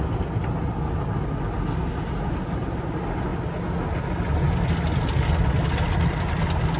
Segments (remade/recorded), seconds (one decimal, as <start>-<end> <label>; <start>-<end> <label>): 0.0-6.8 recorded